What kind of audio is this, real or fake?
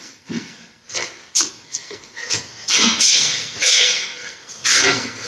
fake